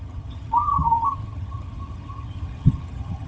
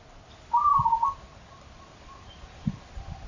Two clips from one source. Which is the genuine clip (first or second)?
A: second